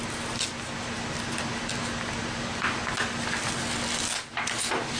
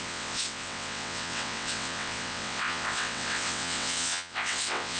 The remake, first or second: second